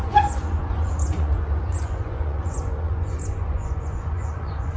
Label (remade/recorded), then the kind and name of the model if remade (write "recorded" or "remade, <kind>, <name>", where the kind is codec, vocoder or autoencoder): remade, vocoder, Vocos